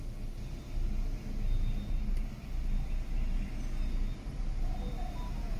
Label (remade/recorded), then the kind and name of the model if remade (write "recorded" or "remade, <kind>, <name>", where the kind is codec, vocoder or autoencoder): recorded